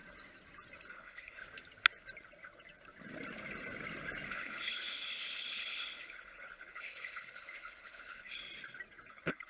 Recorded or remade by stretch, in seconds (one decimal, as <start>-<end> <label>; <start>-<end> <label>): 0.0-0.9 recorded; 0.9-1.4 remade; 1.4-4.3 recorded; 4.3-8.4 remade; 8.4-9.1 recorded; 9.1-9.5 remade